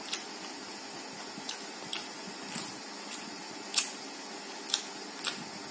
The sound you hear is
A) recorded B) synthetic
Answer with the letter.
A